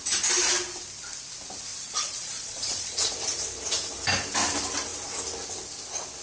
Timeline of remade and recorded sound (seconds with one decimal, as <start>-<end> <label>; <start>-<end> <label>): 0.0-1.7 recorded; 1.7-3.1 remade; 3.1-6.2 recorded